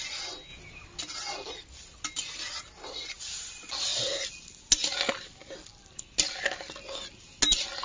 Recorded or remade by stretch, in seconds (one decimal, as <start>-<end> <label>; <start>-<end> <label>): 0.0-7.8 recorded